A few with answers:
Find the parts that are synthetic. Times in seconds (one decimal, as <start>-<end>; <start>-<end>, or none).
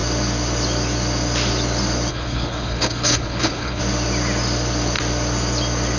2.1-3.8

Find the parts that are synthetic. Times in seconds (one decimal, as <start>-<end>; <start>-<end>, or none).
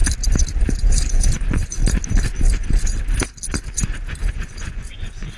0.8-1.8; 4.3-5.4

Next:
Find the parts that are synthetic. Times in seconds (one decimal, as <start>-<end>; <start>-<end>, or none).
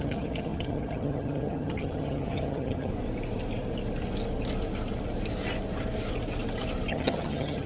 0.0-2.9; 6.9-7.7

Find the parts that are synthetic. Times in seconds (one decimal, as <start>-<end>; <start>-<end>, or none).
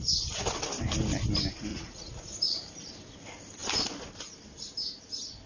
1.7-2.2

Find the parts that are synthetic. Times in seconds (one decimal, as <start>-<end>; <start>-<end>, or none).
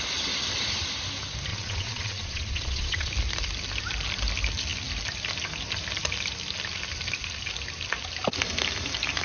1.5-3.1